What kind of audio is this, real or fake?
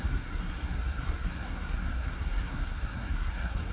fake